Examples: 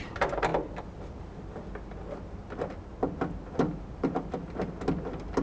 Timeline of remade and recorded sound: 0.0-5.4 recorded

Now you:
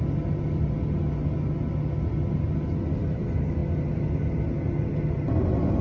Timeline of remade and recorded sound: 0.0-5.8 recorded